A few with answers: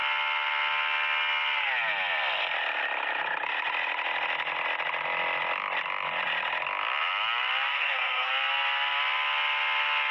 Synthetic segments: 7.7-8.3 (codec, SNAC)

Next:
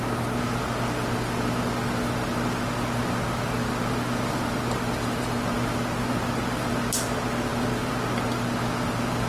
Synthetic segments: none

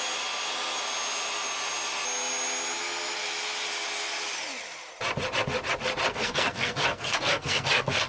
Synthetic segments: 6.1-8.1 (codec, SNAC)

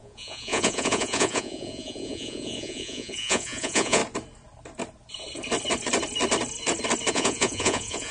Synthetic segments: 0.0-4.0 (vocoder, Vocos); 7.1-8.1

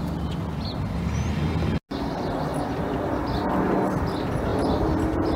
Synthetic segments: 2.5-3.2 (vocoder, BigVGAN v2); 4.5-5.0

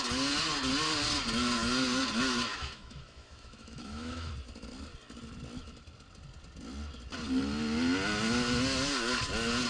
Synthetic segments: 2.5-4.3 (autoencoder, DAC-VAE)

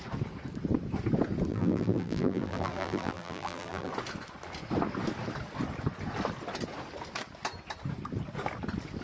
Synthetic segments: 1.5-3.9 (vocoder, BigVGAN v2)

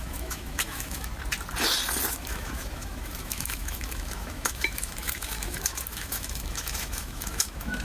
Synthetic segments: 0.0-1.1 (autoencoder, DAC-VAE); 2.1-7.8